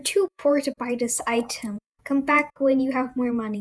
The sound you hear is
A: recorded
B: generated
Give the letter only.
B